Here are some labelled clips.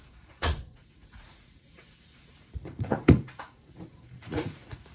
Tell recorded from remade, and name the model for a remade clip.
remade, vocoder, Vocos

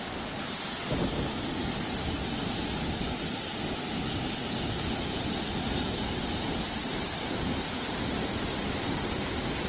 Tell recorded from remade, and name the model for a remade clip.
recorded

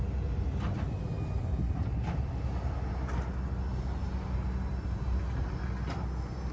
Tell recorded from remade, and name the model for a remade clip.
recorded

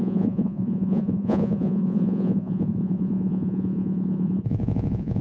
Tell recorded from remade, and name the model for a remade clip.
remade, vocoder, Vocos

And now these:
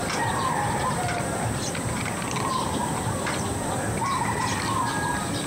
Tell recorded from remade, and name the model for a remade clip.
recorded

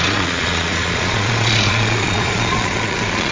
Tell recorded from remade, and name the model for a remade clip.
remade, vocoder, Vocos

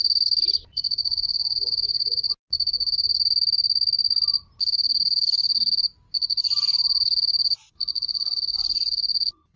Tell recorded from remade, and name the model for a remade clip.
recorded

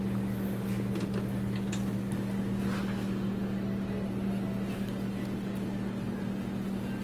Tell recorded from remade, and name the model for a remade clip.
recorded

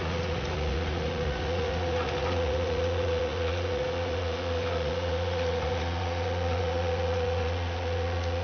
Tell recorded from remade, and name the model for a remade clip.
remade, vocoder, Vocos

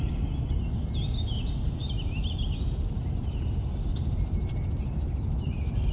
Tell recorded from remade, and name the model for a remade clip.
recorded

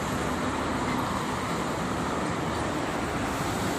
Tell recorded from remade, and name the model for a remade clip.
recorded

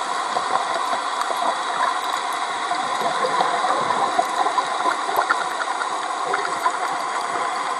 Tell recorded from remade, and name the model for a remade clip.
recorded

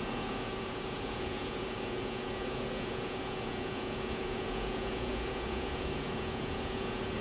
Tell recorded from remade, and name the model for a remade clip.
remade, vocoder, Vocos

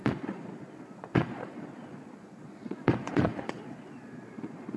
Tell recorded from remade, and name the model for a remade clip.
remade, vocoder, Vocos